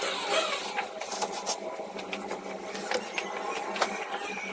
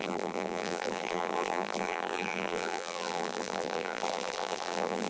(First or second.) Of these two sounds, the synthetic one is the second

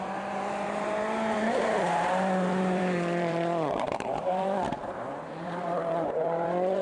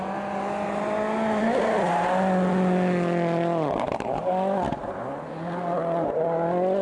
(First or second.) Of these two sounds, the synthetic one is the first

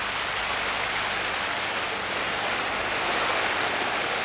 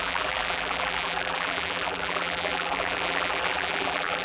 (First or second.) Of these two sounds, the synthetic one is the second